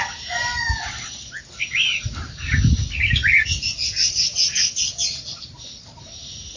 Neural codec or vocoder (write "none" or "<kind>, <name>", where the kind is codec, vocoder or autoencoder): none